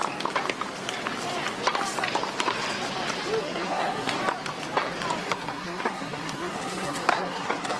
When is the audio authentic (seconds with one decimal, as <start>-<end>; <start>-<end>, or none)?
0.0-3.4; 4.2-5.2